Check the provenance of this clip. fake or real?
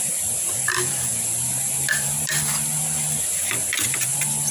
fake